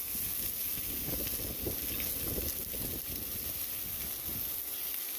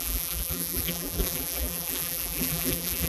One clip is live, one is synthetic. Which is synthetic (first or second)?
second